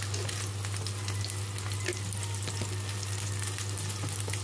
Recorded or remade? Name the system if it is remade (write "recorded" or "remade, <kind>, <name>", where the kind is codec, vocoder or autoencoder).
recorded